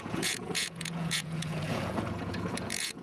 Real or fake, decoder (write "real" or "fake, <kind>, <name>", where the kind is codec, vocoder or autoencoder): fake, vocoder, Vocos